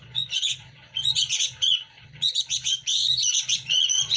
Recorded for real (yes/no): no